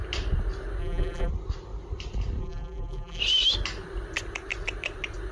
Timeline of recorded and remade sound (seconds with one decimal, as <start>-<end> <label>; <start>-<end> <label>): 0.0-0.8 recorded; 0.8-1.3 remade; 1.3-2.4 recorded; 2.4-3.2 remade; 3.2-5.3 recorded